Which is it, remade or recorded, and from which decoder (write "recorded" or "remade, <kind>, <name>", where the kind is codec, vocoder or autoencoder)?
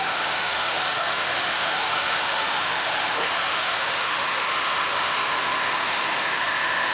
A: remade, autoencoder, DAC-VAE